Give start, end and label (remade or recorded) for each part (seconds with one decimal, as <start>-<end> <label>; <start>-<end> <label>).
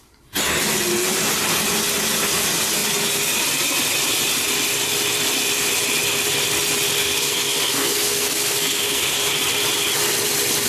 0.0-7.0 recorded; 7.0-9.3 remade; 9.3-10.7 recorded